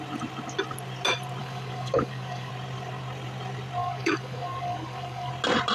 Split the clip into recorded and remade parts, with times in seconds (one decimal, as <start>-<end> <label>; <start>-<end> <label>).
0.0-1.4 recorded; 1.4-2.5 remade; 2.5-3.8 recorded; 3.8-5.3 remade; 5.3-5.7 recorded